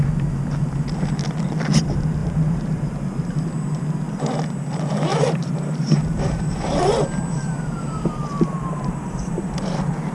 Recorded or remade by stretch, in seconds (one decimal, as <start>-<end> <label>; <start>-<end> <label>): 0.0-2.2 recorded; 2.2-3.5 remade; 3.5-5.1 recorded; 5.1-6.9 remade; 6.9-8.3 recorded; 8.3-10.1 remade